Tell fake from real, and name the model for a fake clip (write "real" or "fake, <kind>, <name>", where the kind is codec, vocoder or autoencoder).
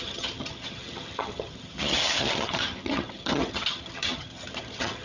fake, vocoder, HiFi-GAN